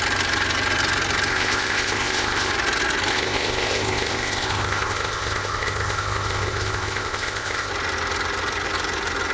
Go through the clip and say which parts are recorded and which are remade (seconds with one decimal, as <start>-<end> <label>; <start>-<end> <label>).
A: 0.0-1.3 recorded; 1.3-2.5 remade; 2.5-3.1 recorded; 3.1-7.7 remade; 7.7-9.3 recorded